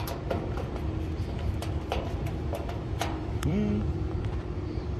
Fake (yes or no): yes